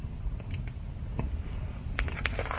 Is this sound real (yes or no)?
yes